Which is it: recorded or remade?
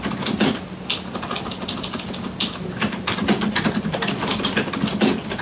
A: recorded